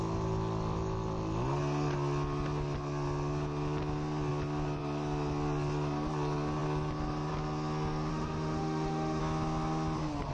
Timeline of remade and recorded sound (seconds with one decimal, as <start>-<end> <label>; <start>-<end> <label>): 0.0-8.1 recorded; 8.1-9.2 remade; 9.2-10.3 recorded